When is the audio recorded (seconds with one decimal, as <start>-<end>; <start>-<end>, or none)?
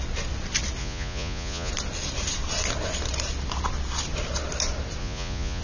0.0-0.8; 1.7-5.0